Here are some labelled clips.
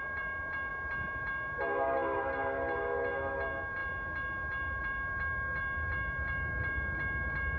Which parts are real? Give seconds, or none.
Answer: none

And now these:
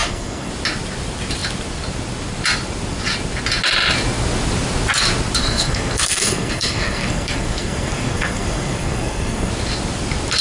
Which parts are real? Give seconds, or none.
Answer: 0.5-5.4; 9.5-10.4